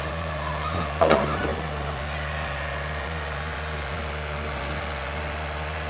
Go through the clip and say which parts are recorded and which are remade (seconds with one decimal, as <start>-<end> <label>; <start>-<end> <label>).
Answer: 0.0-5.9 remade